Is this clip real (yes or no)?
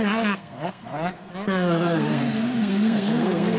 no